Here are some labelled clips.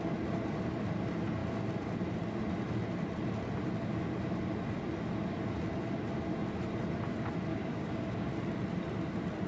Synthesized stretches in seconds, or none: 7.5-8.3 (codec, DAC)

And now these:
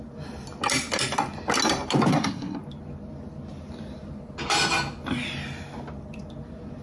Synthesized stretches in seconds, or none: 2.1-2.6 (codec, SNAC)

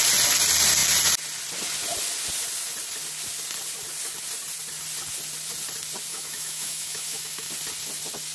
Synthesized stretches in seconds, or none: 6.1-7.5 (autoencoder, DAC-VAE)

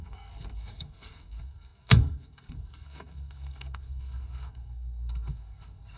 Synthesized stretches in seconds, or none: 0.0-6.0 (codec, SNAC)